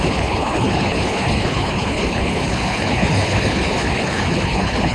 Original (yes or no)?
no